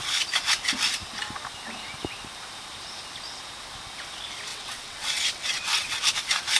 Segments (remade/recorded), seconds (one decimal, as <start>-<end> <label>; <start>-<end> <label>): 0.0-4.5 recorded; 4.5-6.0 remade; 6.0-6.6 recorded